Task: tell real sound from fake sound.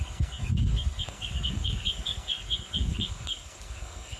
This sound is fake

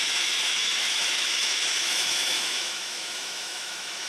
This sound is fake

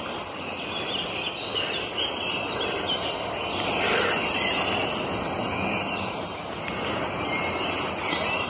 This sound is real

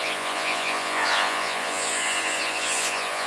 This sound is fake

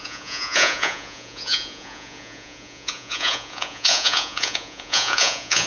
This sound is fake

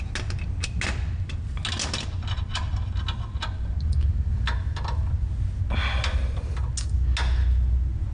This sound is real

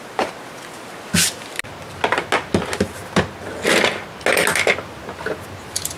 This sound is real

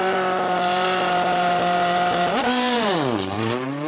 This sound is fake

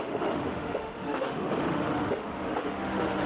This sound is fake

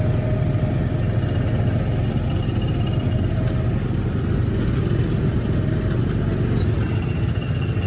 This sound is real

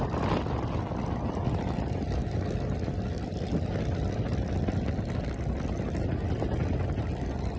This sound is real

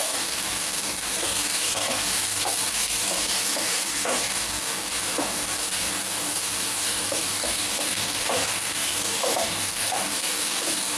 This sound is fake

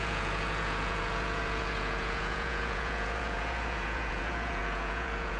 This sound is fake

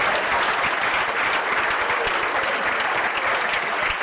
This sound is real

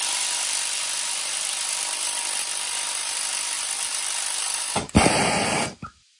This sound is fake